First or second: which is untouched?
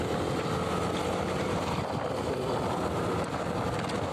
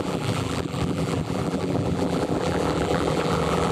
first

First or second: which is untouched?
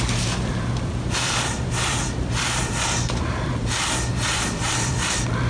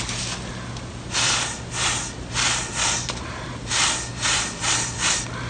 second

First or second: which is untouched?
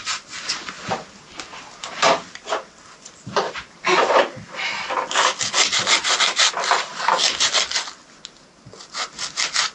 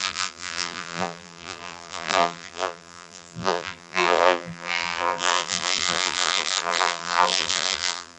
first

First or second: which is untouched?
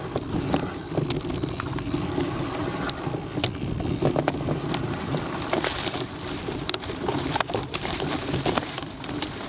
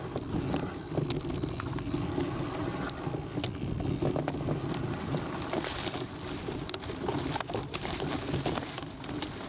second